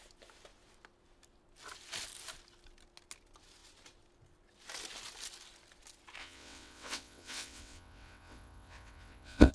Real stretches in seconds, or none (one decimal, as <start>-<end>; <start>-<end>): 0.0-6.2